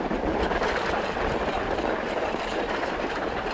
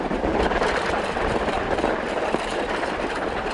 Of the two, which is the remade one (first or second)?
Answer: second